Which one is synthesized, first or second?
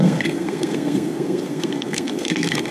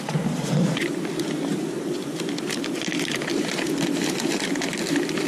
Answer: first